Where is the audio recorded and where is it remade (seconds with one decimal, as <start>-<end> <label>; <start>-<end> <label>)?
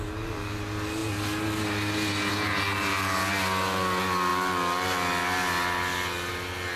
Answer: 0.0-6.8 recorded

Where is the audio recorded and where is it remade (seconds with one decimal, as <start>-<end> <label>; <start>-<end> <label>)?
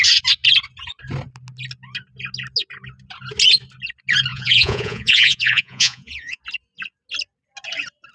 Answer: 0.0-4.3 recorded; 4.3-6.4 remade; 6.4-8.1 recorded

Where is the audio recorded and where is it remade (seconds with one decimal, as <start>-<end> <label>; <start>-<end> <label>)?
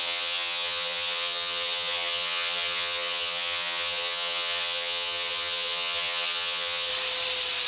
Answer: 0.0-6.9 remade; 6.9-7.7 recorded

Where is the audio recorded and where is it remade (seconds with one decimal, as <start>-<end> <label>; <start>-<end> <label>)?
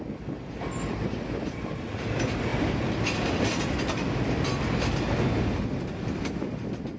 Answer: 0.0-7.0 recorded